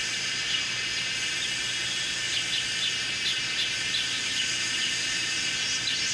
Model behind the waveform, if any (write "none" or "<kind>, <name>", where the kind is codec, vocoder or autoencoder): none